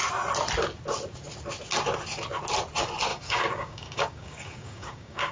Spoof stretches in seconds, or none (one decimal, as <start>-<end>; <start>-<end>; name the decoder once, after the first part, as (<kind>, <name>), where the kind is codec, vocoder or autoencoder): 3.1-5.3 (codec, DAC)